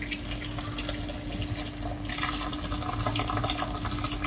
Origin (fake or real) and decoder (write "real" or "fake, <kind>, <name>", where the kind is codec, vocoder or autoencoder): real